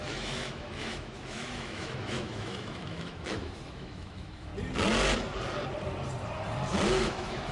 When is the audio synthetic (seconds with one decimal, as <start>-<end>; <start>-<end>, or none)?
0.0-4.5; 7.0-7.5